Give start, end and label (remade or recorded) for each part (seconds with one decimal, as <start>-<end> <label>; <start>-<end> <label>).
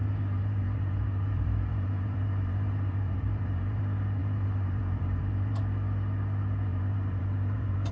0.0-3.8 remade; 3.8-4.2 recorded; 4.2-5.6 remade; 5.6-6.7 recorded; 6.7-7.9 remade